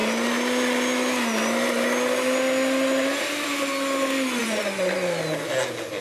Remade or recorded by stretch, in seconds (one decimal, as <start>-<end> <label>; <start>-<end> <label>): 0.0-4.4 recorded; 4.4-5.0 remade; 5.0-6.0 recorded